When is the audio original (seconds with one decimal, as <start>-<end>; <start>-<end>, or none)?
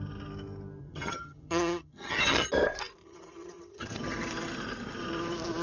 0.0-0.8; 2.5-3.0; 4.0-5.6